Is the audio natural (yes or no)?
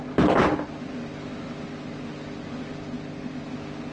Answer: yes